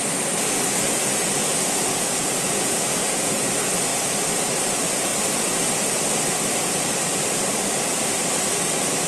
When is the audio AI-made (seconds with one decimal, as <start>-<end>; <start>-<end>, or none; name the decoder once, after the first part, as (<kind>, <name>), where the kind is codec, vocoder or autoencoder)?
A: 1.4-3.5 (vocoder, Vocos)